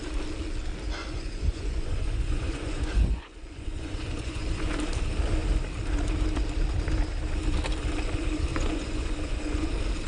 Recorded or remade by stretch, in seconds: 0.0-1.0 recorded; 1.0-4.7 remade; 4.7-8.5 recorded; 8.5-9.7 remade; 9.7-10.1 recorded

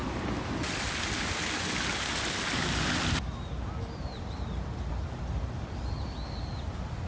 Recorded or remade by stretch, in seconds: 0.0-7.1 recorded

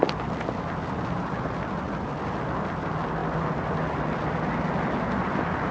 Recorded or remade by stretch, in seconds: 0.0-5.7 recorded

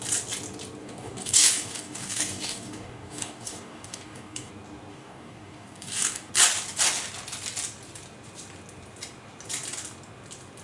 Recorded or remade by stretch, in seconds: 0.0-0.8 recorded; 0.8-4.5 remade; 4.5-4.9 recorded; 4.9-6.3 remade; 6.3-10.6 recorded

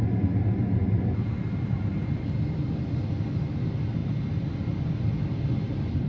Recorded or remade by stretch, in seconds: 0.0-6.1 recorded